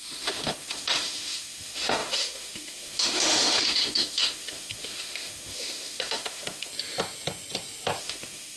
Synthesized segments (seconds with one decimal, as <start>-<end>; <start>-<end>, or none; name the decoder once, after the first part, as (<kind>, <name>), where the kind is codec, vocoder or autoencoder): 0.0-6.7 (autoencoder, DAC-VAE); 8.0-8.6